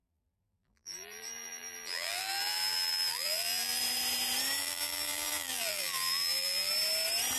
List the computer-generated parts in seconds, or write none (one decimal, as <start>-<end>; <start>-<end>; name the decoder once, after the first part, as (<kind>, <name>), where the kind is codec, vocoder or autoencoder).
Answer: 0.0-3.8 (vocoder, BigVGAN v2); 4.6-6.7